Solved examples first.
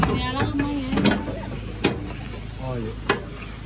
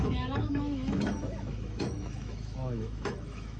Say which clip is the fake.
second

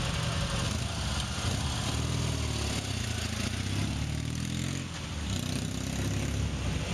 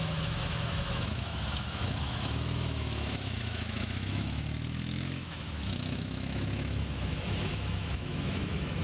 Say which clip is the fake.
second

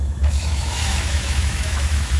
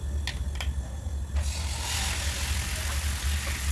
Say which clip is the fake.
first